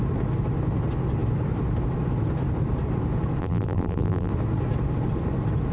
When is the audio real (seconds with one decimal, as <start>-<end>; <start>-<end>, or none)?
0.0-3.4; 4.3-5.7